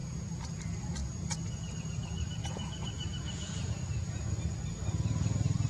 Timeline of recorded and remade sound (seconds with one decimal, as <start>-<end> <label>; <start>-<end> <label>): 0.0-0.6 remade; 0.6-1.0 recorded; 1.0-4.3 remade; 4.3-5.7 recorded